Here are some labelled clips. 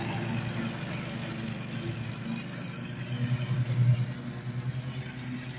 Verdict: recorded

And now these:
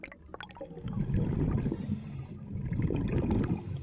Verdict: recorded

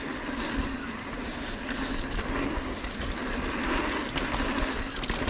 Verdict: recorded